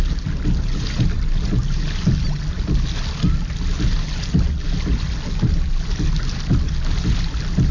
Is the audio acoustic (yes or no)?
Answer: yes